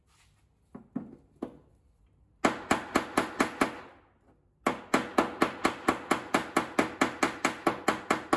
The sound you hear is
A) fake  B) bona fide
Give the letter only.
B